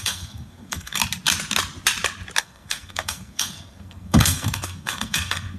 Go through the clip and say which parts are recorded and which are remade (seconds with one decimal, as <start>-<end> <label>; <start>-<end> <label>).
0.0-1.0 remade; 1.0-2.4 recorded; 2.4-5.6 remade